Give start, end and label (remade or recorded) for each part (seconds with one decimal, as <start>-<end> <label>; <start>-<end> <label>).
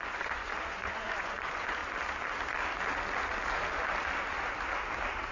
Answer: 0.0-1.8 remade; 1.8-5.3 recorded